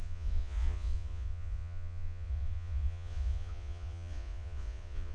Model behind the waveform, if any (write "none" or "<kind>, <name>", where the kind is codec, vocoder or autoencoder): vocoder, Vocos